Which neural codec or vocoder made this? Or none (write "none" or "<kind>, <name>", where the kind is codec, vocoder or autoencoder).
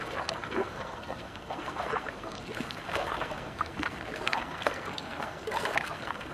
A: codec, SNAC